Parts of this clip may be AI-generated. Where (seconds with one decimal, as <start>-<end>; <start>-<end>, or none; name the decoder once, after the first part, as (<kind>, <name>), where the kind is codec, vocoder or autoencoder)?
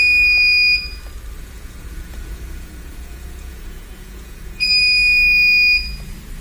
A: 1.4-4.7 (vocoder, Vocos)